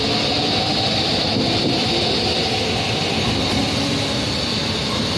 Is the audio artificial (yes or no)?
no